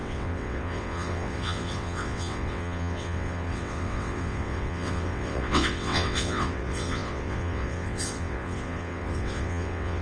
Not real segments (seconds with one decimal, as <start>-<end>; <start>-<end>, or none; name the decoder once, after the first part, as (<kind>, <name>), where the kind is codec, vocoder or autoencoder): 0.0-10.0 (vocoder, WaveNeXt)